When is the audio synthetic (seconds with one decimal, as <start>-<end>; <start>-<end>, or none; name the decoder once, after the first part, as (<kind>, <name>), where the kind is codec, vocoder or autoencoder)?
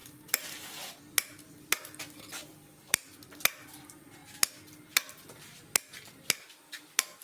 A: 0.0-0.9 (vocoder, BigVGAN v2); 2.4-3.1